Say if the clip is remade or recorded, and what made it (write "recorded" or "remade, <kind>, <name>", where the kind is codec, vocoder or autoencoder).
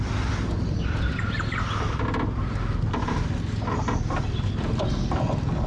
recorded